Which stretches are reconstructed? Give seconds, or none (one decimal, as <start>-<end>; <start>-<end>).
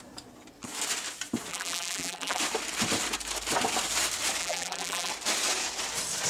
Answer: 1.5-2.4; 4.4-5.1